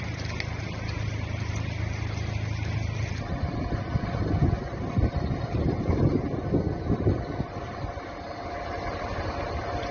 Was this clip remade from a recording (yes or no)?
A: no